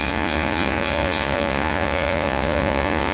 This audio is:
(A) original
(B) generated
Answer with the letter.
B